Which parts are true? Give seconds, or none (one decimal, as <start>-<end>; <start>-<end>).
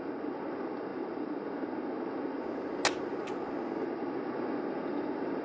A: 0.0-5.4